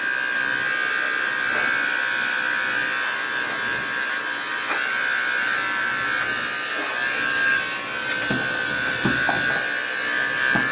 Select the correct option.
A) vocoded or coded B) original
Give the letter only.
B